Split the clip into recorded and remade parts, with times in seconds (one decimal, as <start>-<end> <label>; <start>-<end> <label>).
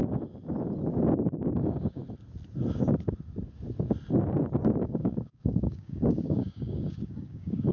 0.0-1.0 recorded; 1.0-2.0 remade; 2.0-4.7 recorded; 4.7-7.7 remade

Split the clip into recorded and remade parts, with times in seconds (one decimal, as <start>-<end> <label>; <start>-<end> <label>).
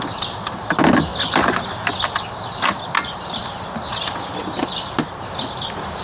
0.0-6.0 recorded